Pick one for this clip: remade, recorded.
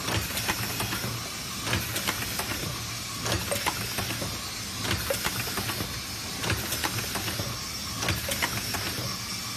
recorded